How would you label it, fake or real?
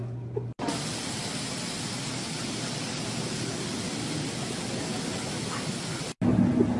real